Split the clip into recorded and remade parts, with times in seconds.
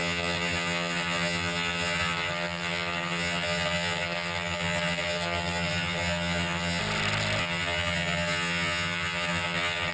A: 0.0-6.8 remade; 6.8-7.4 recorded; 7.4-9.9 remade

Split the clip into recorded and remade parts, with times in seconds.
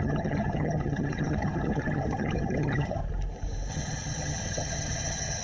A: 0.0-3.0 remade; 3.0-3.7 recorded; 3.7-5.4 remade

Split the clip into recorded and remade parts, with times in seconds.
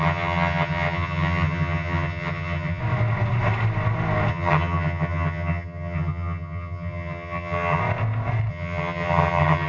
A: 0.0-2.8 remade; 2.8-4.3 recorded; 4.3-7.8 remade; 7.8-8.5 recorded; 8.5-9.7 remade